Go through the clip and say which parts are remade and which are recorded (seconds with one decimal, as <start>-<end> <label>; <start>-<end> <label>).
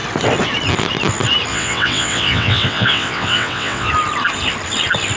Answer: 0.0-1.5 recorded; 1.5-3.9 remade; 3.9-5.2 recorded